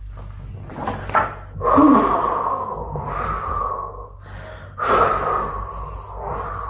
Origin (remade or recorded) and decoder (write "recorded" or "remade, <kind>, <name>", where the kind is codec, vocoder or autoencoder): recorded